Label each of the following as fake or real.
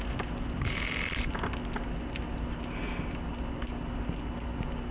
real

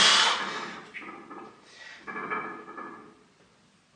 real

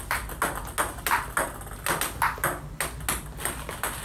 real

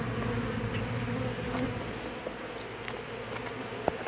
real